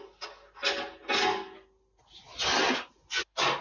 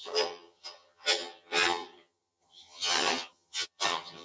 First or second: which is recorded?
first